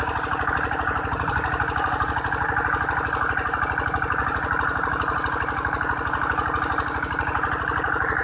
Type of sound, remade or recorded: recorded